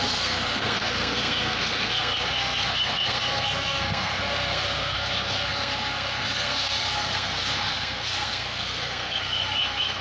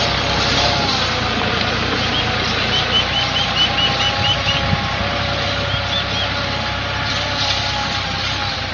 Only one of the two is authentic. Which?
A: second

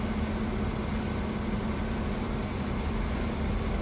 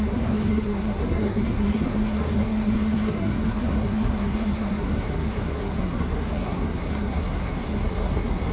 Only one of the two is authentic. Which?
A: first